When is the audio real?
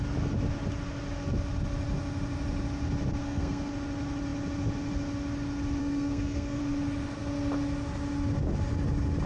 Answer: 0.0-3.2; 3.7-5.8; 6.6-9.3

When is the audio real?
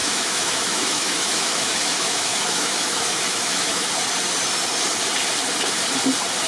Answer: 3.9-6.5